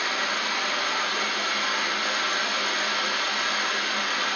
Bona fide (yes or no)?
yes